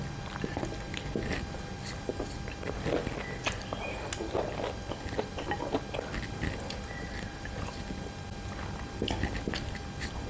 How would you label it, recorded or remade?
recorded